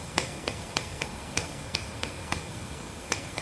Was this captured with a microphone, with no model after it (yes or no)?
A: no